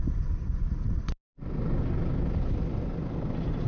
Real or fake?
real